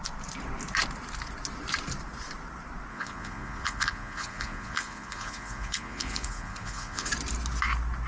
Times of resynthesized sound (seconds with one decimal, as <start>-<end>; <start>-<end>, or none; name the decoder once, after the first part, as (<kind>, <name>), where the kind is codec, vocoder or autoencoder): 2.9-7.1 (vocoder, Vocos)